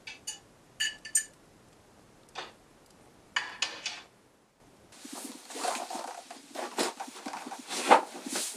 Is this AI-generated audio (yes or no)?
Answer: no